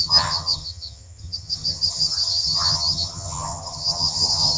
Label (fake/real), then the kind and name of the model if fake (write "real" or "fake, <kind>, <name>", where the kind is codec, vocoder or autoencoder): fake, vocoder, HiFi-GAN